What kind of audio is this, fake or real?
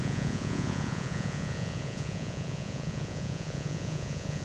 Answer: fake